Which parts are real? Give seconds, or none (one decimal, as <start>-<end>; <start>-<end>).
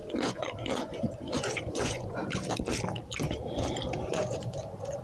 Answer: 2.2-4.1